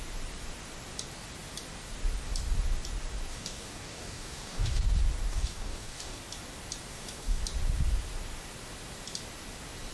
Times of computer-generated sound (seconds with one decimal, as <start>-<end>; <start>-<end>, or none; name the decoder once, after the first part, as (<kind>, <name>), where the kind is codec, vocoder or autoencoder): 3.3-4.8 (codec, DAC); 5.3-6.2; 6.9-7.4